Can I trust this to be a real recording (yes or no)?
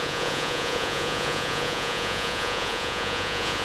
no